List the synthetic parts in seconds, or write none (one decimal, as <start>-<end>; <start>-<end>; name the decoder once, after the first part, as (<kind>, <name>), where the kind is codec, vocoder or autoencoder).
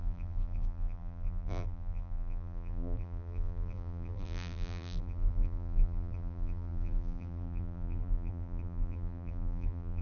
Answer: 0.0-10.0 (vocoder, BigVGAN v2)